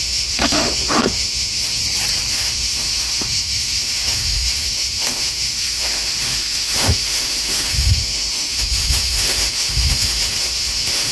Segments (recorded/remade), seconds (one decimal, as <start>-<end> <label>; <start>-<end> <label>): 0.0-1.8 remade; 1.8-2.3 recorded; 2.3-11.1 remade